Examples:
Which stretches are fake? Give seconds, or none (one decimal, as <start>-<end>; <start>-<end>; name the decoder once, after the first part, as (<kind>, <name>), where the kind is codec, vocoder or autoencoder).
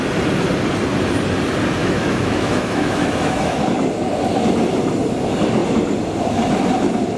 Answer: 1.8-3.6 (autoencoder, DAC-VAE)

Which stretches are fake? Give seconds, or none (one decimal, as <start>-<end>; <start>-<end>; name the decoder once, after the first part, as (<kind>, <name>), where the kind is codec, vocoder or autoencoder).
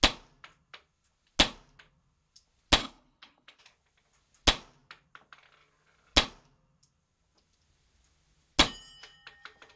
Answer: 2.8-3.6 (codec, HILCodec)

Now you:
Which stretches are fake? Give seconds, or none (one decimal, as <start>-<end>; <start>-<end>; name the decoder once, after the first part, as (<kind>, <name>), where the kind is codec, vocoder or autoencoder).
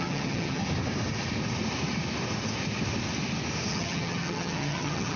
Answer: 0.0-0.6 (vocoder, HiFi-GAN); 3.7-5.2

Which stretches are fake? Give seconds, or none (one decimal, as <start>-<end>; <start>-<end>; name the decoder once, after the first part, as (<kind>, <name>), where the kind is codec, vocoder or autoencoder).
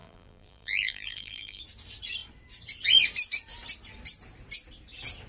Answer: 0.0-1.6 (vocoder, BigVGAN v2)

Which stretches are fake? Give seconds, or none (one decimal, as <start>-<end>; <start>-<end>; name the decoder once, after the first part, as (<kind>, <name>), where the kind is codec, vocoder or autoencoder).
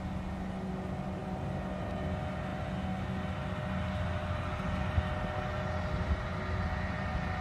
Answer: none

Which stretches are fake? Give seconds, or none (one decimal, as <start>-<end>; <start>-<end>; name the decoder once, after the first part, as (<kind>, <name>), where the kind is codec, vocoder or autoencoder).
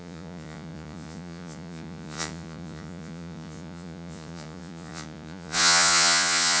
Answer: 0.0-6.6 (vocoder, Vocos)